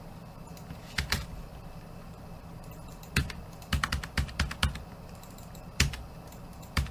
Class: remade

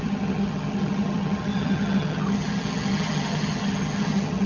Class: remade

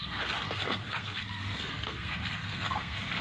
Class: remade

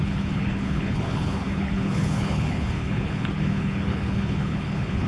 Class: remade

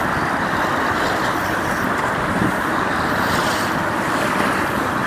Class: recorded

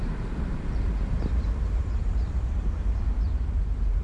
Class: remade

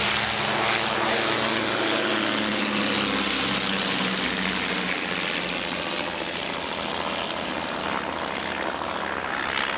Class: recorded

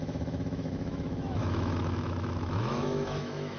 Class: remade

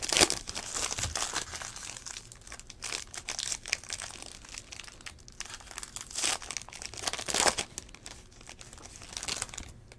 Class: recorded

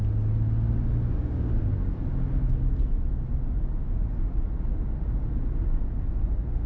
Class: recorded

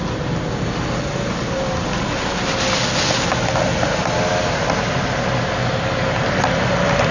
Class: recorded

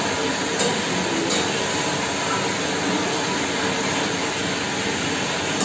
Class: recorded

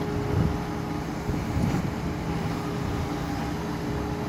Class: recorded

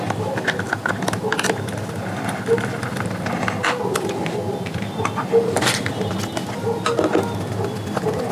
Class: recorded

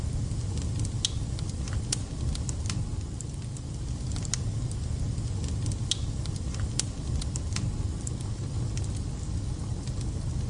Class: recorded